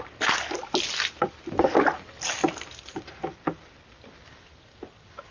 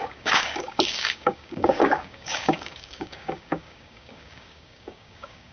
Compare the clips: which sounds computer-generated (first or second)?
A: second